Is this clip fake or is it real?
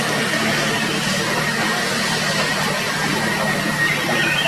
real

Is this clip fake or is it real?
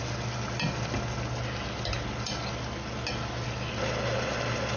real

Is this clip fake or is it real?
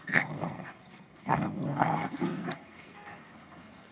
fake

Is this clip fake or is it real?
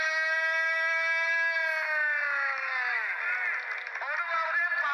real